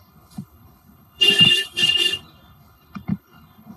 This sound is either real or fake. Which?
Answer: fake